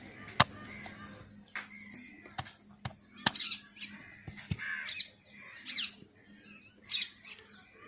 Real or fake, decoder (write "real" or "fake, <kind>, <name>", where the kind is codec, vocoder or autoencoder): real